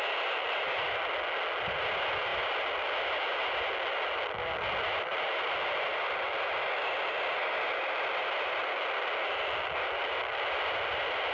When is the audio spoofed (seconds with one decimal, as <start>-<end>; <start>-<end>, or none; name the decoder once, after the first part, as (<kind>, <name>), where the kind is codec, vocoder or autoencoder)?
5.9-8.7 (vocoder, BigVGAN v2)